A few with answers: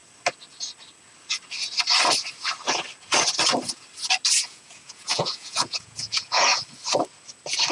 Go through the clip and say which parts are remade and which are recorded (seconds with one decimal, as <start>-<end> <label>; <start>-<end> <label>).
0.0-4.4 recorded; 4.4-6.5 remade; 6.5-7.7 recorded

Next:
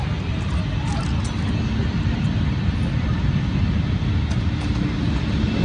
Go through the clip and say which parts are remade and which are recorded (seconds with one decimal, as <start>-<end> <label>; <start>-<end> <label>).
0.0-5.6 recorded

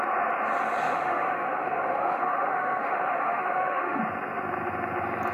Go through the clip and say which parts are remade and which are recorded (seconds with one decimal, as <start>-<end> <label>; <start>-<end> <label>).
0.0-0.8 recorded; 0.8-4.0 remade; 4.0-5.3 recorded

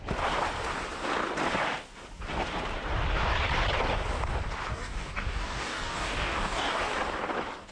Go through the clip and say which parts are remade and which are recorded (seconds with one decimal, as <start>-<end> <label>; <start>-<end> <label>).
0.0-4.7 recorded; 4.7-6.8 remade; 6.8-7.7 recorded

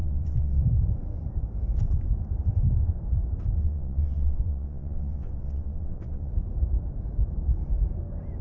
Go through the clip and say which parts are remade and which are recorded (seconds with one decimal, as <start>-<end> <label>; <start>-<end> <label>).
0.0-0.6 remade; 0.6-3.6 recorded; 3.6-6.3 remade; 6.3-8.4 recorded